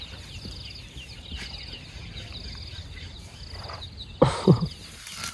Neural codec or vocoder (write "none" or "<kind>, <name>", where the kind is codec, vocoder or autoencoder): none